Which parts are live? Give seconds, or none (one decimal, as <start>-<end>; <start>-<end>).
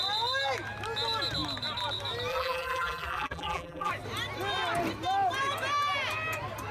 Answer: 0.0-2.3; 3.9-6.7